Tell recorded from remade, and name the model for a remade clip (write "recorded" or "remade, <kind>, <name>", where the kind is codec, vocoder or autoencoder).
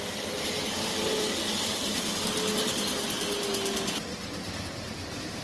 recorded